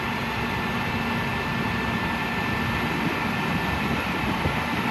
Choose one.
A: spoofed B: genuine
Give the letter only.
B